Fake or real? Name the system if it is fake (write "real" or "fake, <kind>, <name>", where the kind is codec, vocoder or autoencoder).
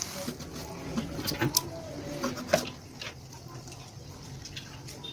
real